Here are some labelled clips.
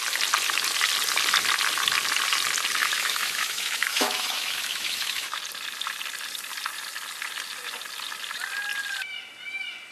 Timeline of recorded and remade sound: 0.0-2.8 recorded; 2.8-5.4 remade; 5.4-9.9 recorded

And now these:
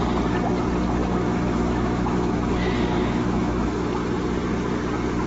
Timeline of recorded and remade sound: 0.0-1.0 recorded; 1.0-3.9 remade; 3.9-5.3 recorded

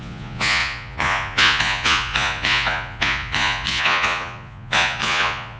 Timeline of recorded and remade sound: 0.0-5.6 remade

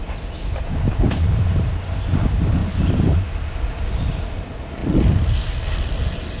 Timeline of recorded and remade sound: 0.0-6.4 recorded

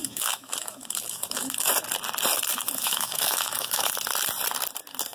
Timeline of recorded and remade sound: 0.0-1.7 remade; 1.7-2.5 recorded; 2.5-3.9 remade; 3.9-5.1 recorded